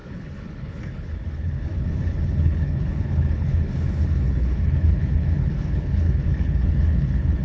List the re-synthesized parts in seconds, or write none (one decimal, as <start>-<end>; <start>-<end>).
0.0-7.4